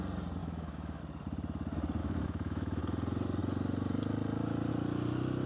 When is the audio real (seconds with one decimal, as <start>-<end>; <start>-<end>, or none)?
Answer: 0.0-0.4; 1.0-2.0; 2.8-5.5